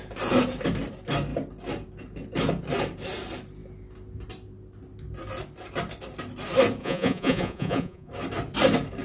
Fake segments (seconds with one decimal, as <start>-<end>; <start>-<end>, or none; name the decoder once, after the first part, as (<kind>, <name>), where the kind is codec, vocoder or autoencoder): 6.8-8.1 (vocoder, Vocos)